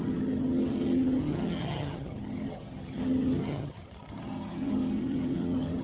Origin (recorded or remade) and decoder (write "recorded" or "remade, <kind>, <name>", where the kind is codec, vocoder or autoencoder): remade, vocoder, HiFi-GAN